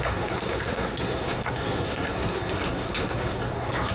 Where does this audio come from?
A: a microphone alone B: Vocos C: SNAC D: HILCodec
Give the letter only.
C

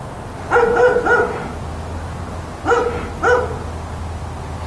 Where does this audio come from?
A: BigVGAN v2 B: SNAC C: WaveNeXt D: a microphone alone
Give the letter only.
D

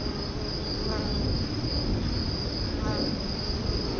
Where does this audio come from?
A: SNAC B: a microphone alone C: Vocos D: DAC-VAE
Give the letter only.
B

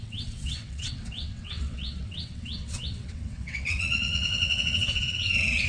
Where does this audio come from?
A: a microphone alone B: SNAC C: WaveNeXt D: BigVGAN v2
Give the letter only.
C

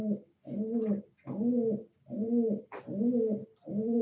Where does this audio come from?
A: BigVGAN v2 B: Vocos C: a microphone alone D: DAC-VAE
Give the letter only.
C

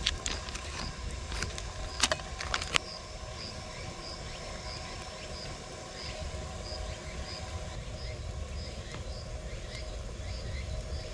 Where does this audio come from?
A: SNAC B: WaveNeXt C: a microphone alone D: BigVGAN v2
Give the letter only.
C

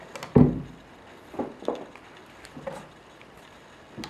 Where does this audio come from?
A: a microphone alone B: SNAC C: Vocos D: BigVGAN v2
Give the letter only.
A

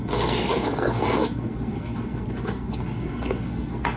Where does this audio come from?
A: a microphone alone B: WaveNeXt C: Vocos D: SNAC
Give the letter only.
D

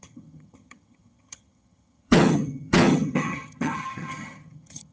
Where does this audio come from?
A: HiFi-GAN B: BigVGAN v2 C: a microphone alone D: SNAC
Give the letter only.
A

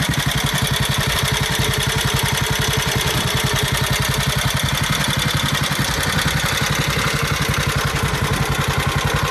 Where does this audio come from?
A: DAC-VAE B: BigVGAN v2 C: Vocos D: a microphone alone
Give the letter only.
D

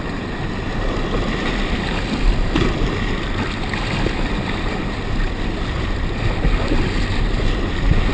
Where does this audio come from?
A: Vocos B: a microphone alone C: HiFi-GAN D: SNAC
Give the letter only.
B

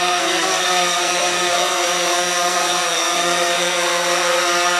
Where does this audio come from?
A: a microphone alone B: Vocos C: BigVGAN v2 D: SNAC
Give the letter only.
D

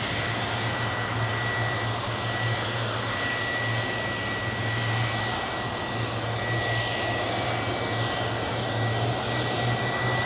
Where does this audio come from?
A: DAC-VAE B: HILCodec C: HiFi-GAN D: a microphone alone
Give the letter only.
D